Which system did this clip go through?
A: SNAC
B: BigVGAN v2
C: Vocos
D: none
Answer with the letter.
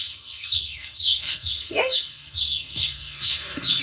A